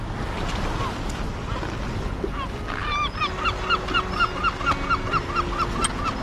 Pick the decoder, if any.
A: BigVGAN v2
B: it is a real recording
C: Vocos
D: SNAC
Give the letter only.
B